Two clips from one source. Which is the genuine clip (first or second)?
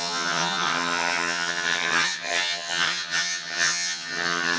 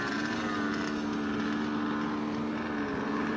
second